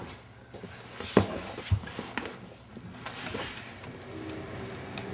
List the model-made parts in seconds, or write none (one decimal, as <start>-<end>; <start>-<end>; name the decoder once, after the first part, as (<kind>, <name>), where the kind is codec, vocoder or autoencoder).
none